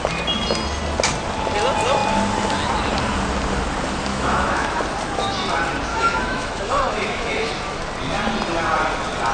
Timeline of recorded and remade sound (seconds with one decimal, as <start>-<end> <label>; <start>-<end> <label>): 0.0-4.1 recorded; 4.1-4.8 remade; 4.8-5.9 recorded; 5.9-7.5 remade; 7.5-9.3 recorded